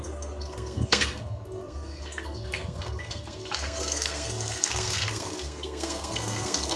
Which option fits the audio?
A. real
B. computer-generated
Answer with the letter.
B